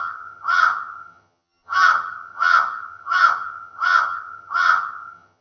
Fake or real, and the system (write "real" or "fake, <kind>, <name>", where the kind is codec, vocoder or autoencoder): fake, vocoder, HiFi-GAN